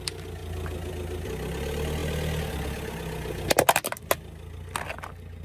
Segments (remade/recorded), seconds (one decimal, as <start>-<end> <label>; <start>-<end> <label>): 0.0-0.4 recorded; 0.4-0.9 remade; 0.9-5.4 recorded